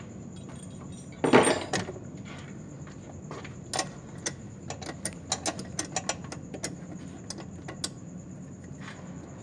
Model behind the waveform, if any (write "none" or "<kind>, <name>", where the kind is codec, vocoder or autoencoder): none